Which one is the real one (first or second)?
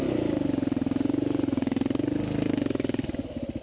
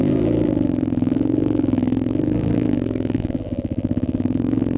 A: first